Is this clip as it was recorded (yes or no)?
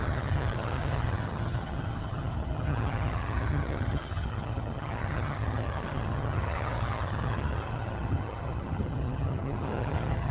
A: no